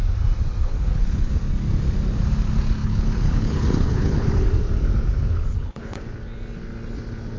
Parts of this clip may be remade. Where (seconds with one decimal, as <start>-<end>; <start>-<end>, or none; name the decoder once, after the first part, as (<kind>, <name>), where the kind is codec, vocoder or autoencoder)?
0.6-1.4 (codec, HILCodec); 2.8-4.3; 5.3-6.0